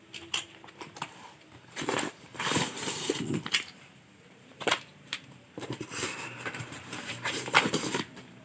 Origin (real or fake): fake